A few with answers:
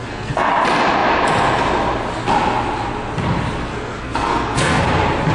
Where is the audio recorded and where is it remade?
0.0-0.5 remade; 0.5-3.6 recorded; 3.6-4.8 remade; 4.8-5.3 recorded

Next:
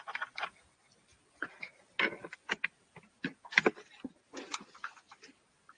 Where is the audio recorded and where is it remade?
0.0-5.8 recorded

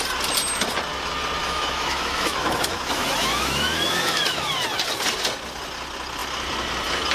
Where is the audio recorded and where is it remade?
0.0-1.4 recorded; 1.4-4.5 remade; 4.5-7.1 recorded

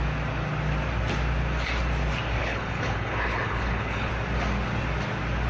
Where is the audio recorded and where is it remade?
0.0-2.4 recorded; 2.4-4.1 remade; 4.1-5.5 recorded

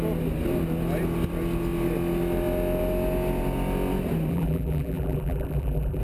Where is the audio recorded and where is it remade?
0.0-4.3 recorded; 4.3-6.0 remade

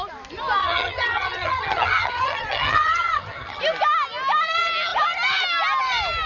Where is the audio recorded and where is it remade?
0.0-0.6 recorded; 0.6-3.6 remade; 3.6-6.3 recorded

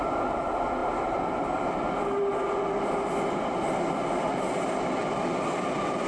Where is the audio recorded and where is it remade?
0.0-6.1 recorded

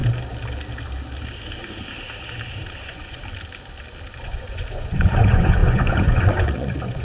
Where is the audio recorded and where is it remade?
0.0-2.8 recorded; 2.8-3.2 remade; 3.2-4.2 recorded; 4.2-7.0 remade